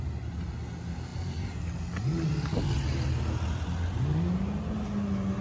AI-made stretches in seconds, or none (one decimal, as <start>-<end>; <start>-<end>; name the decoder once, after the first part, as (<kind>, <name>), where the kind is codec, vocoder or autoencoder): none